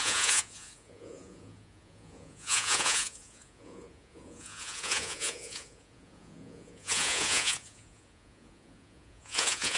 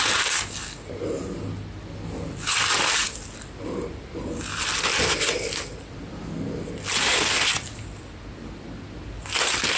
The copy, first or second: first